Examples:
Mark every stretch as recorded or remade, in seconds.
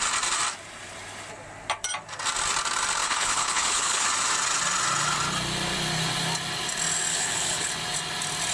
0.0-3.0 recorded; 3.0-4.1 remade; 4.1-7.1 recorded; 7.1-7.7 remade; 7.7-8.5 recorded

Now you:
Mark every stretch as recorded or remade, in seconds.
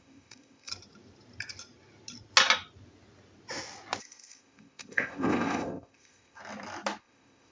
0.0-0.7 remade; 0.7-4.0 recorded; 4.0-6.4 remade; 6.4-7.0 recorded; 7.0-7.5 remade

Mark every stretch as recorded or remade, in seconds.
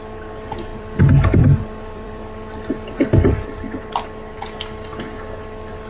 0.0-0.7 recorded; 0.7-3.8 remade; 3.8-5.9 recorded